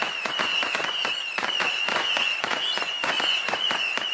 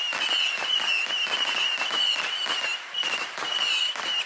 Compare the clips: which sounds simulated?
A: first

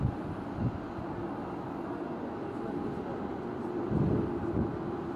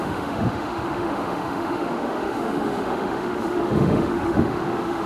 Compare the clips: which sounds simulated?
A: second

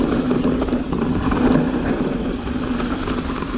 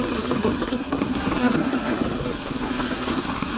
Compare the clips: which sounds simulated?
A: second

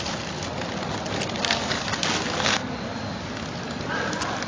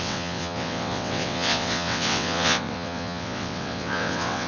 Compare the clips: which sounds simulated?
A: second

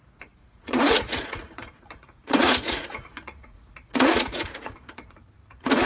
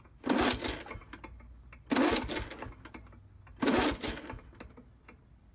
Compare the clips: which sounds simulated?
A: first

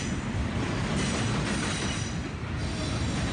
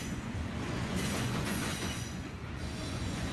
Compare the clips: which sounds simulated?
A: second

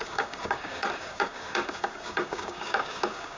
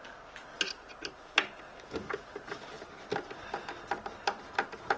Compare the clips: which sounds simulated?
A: first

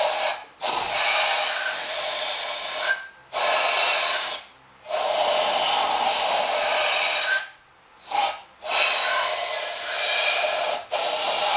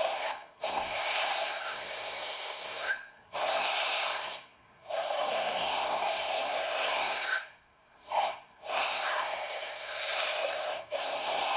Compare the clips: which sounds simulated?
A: second